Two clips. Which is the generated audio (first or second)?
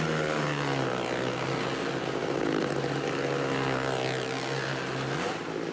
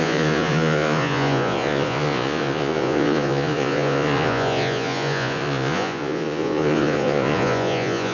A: second